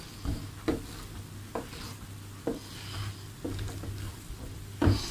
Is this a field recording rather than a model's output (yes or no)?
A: yes